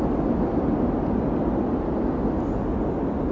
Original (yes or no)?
yes